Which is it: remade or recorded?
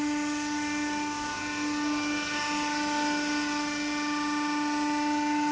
recorded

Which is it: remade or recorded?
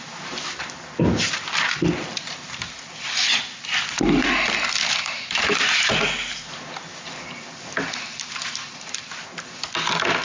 recorded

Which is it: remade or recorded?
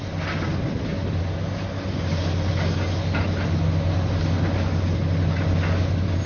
recorded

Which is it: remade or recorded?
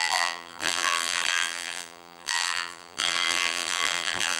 remade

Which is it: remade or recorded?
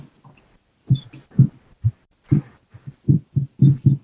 remade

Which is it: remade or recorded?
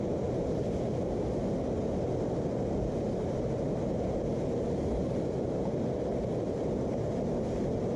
recorded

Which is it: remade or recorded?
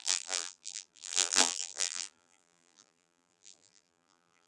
remade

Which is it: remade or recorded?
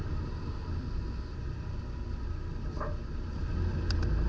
recorded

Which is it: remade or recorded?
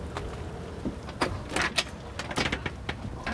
recorded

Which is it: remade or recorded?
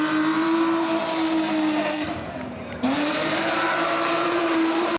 remade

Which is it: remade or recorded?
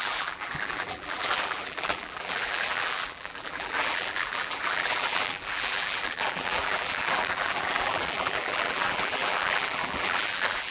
remade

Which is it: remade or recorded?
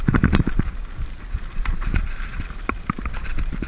recorded